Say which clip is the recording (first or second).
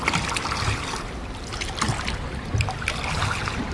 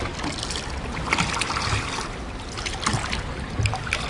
second